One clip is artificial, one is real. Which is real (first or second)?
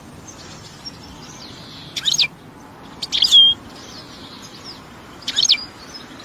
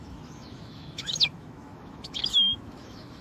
first